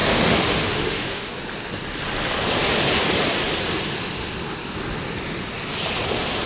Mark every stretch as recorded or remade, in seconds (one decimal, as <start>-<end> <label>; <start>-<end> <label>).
0.0-1.3 remade; 1.3-6.5 recorded